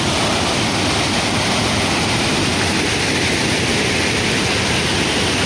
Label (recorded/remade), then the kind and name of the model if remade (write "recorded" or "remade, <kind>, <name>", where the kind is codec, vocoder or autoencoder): recorded